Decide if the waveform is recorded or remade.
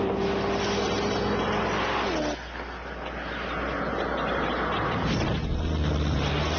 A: recorded